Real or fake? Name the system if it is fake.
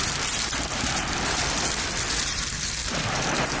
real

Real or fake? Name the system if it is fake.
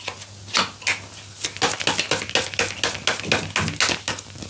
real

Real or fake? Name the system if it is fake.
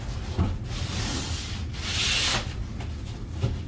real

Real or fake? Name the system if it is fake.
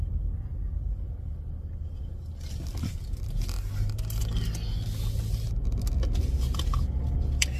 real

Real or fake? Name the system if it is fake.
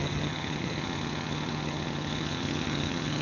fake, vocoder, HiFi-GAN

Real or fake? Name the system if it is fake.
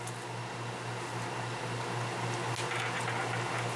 real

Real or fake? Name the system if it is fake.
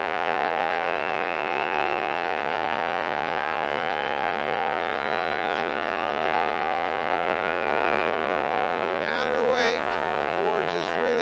fake, vocoder, Vocos